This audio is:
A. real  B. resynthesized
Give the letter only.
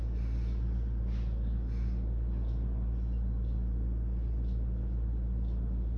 A